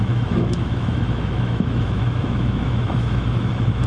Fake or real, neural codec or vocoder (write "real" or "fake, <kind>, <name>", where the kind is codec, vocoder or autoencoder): fake, autoencoder, DAC-VAE